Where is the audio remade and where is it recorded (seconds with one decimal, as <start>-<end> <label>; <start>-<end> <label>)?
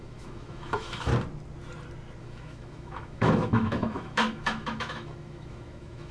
0.0-1.1 remade; 1.1-2.2 recorded; 2.2-6.1 remade